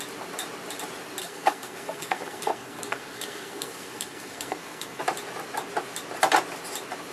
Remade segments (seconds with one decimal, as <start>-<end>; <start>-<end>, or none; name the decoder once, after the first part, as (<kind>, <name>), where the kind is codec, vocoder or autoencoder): 1.2-5.0 (codec, SNAC)